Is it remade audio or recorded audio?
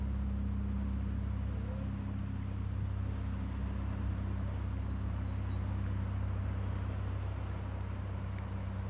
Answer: recorded